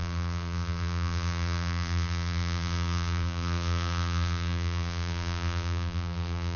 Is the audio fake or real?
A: fake